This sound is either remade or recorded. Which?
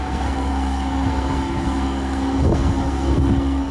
remade